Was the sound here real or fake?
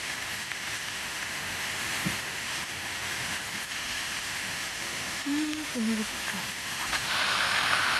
fake